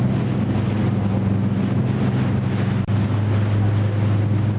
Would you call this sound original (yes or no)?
yes